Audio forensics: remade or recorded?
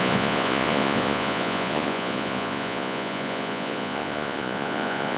remade